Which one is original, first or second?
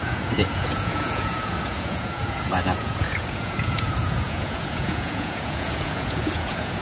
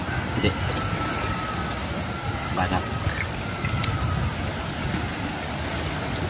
second